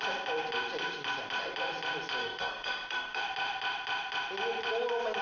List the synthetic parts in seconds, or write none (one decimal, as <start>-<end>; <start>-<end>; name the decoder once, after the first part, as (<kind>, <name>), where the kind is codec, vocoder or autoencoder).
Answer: 2.2-3.2 (codec, SNAC)